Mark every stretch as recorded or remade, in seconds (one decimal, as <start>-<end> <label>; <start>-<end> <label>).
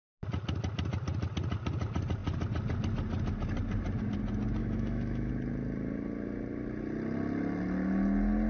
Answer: 0.0-4.6 recorded; 4.6-5.3 remade; 5.3-8.5 recorded